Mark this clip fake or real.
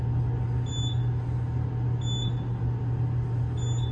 real